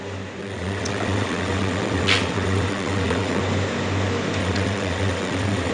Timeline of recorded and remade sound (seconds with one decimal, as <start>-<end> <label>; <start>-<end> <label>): 0.0-0.4 recorded; 0.4-3.4 remade; 3.4-4.4 recorded; 4.4-5.7 remade